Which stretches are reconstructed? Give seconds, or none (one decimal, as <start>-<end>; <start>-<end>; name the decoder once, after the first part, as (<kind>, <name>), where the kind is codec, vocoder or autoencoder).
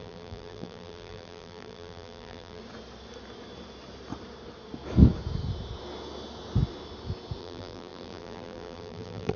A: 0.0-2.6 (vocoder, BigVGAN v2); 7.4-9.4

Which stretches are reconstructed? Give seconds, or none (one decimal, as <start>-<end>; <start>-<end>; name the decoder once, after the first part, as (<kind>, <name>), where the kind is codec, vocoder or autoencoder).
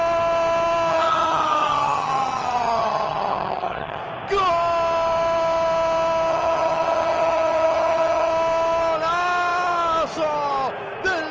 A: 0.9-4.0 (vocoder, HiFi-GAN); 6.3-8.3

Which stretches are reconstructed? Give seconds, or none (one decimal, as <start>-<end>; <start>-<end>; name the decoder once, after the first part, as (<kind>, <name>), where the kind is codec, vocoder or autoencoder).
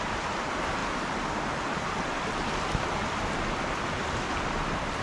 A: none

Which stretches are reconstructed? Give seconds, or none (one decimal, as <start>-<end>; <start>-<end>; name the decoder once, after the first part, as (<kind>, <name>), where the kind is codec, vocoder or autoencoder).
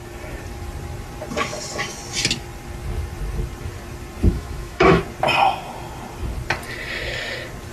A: 4.3-5.0 (autoencoder, DAC-VAE)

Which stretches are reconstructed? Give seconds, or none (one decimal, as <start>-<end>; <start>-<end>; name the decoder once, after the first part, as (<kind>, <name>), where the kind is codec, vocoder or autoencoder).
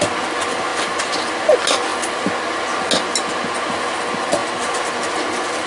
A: none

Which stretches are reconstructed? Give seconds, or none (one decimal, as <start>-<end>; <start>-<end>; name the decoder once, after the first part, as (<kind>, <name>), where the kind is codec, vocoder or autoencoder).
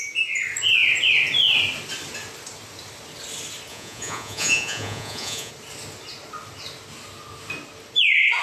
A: 3.7-5.5 (vocoder, Vocos)